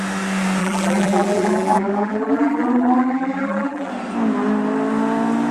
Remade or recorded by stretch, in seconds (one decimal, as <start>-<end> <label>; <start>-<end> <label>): 0.0-0.6 recorded; 0.6-3.9 remade; 3.9-5.5 recorded